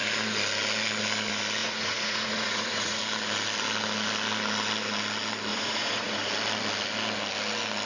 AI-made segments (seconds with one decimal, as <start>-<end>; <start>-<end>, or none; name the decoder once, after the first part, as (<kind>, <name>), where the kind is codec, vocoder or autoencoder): 1.6-3.0 (vocoder, Vocos); 5.5-6.3